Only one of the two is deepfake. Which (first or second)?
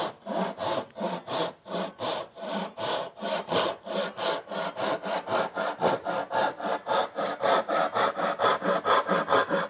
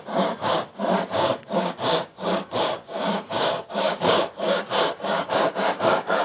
second